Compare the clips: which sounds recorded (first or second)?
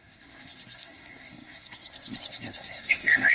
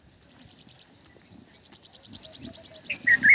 second